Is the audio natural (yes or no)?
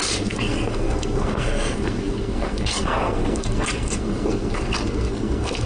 no